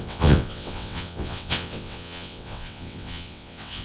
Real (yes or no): no